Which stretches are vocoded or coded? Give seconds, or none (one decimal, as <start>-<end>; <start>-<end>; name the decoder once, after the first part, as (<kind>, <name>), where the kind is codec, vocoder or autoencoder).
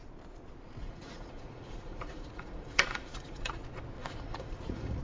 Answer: 0.8-3.6 (vocoder, Vocos); 4.0-5.0